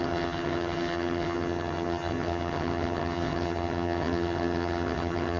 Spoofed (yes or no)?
yes